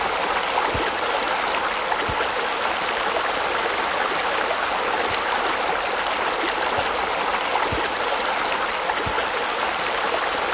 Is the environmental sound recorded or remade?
recorded